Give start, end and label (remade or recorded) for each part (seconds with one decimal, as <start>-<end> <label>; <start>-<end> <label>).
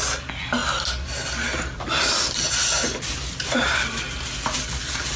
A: 0.0-5.2 recorded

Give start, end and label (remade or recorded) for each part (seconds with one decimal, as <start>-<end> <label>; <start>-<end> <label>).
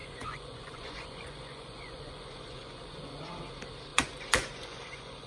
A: 0.0-3.2 remade; 3.2-3.9 recorded; 3.9-5.3 remade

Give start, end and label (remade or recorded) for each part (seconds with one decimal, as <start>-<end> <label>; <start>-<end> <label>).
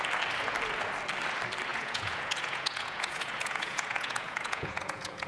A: 0.0-1.7 recorded; 1.7-5.3 remade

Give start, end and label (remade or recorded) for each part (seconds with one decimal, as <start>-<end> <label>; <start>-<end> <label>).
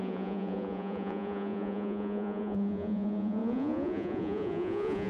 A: 0.0-5.1 remade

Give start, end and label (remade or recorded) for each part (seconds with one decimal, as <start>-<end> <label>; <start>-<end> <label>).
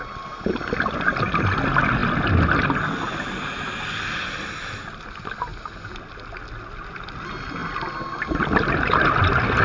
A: 0.0-9.6 recorded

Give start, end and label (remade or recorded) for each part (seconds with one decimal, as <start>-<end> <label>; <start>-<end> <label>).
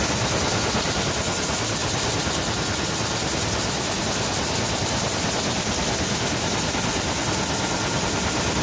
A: 0.0-8.6 recorded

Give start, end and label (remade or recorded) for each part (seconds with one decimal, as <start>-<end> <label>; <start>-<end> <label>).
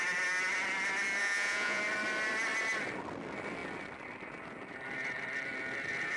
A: 0.0-1.2 recorded; 1.2-1.8 remade; 1.8-6.2 recorded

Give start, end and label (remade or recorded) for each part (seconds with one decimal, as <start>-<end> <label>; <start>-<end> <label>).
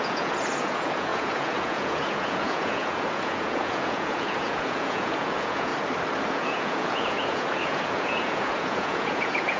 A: 0.0-5.7 remade; 5.7-6.3 recorded; 6.3-9.6 remade